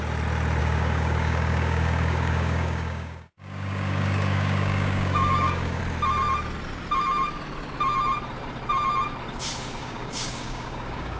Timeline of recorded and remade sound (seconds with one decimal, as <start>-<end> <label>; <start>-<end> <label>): 0.0-0.6 recorded; 0.6-5.8 remade; 5.8-9.8 recorded; 9.8-11.2 remade